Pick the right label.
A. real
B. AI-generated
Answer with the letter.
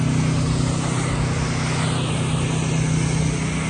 A